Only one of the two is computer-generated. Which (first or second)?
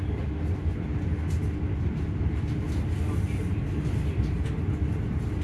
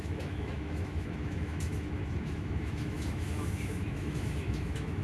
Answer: second